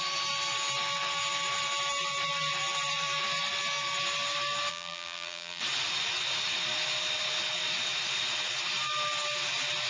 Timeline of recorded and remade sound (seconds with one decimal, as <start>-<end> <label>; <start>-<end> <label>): 0.0-4.7 recorded; 4.7-5.6 remade; 5.6-9.9 recorded